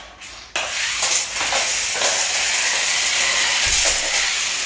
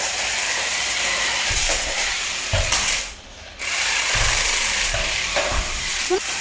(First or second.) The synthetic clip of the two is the second